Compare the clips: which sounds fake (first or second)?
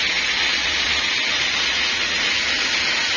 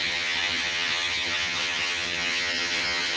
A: second